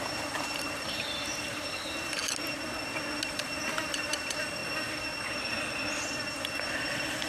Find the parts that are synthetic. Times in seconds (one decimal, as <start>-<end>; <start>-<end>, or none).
0.0-2.2; 3.3-4.6; 6.7-7.3